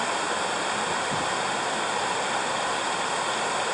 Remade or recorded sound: recorded